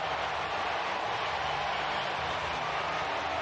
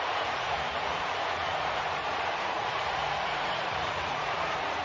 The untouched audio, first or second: first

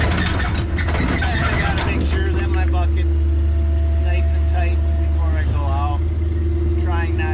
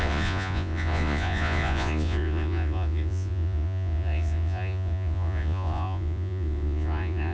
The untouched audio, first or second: first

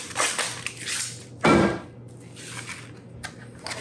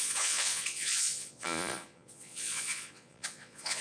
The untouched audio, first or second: first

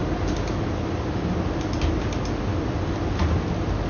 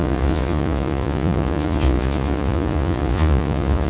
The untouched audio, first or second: first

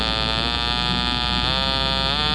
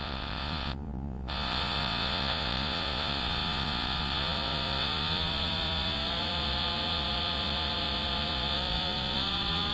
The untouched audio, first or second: first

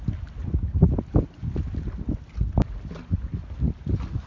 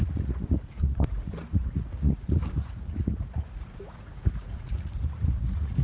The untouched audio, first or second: first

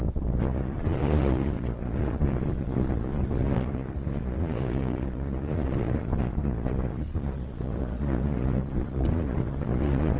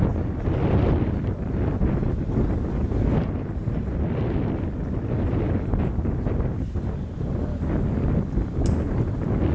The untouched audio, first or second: second